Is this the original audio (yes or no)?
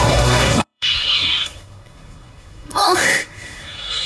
no